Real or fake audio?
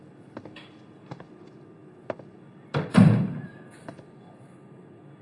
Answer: real